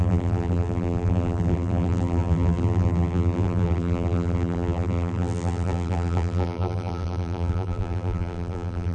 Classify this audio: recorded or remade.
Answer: remade